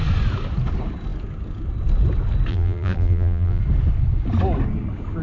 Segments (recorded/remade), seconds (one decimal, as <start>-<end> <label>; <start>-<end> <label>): 0.0-2.5 recorded; 2.5-3.6 remade; 3.6-5.2 recorded